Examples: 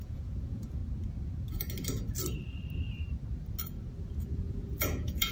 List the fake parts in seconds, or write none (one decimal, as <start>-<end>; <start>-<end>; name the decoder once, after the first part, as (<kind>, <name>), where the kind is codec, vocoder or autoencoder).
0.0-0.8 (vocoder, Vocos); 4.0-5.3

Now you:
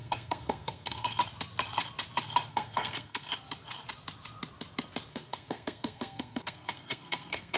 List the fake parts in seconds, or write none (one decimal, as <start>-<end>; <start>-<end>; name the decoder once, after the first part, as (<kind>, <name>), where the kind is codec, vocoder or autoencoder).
0.0-1.2 (codec, SNAC); 2.5-3.3; 5.1-7.6

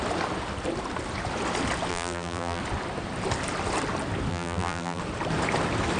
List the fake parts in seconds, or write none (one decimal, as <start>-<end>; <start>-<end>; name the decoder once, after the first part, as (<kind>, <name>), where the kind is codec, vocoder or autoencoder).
1.9-2.6 (vocoder, BigVGAN v2); 4.3-5.0

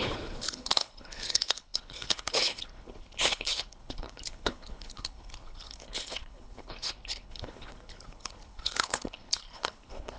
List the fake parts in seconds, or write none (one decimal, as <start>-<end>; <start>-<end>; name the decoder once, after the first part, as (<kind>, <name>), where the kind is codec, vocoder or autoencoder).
0.0-10.2 (codec, HILCodec)

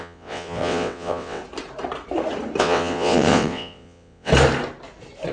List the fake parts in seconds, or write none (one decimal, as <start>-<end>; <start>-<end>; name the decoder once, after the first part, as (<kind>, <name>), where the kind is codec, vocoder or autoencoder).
0.0-1.4 (vocoder, WaveNeXt); 2.6-4.3

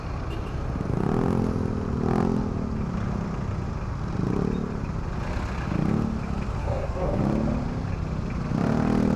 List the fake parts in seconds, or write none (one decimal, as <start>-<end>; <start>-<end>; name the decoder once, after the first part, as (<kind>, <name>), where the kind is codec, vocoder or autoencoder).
6.6-7.2 (codec, DAC)

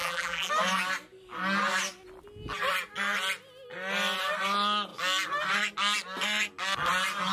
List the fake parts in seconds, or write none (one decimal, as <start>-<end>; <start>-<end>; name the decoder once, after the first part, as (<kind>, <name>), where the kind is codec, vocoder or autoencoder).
0.0-0.5 (vocoder, BigVGAN v2)